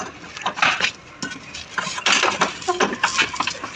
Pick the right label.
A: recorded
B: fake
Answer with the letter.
A